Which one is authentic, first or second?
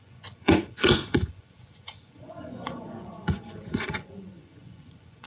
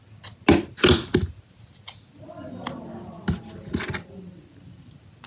second